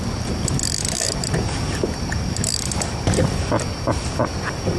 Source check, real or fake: real